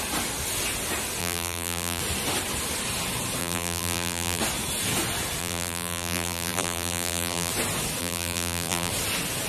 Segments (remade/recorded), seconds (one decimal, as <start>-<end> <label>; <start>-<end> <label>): 0.0-1.2 recorded; 1.2-2.0 remade; 2.0-3.4 recorded; 3.4-4.4 remade; 4.4-5.4 recorded; 5.4-7.5 remade; 7.5-8.0 recorded; 8.0-8.9 remade; 8.9-9.5 recorded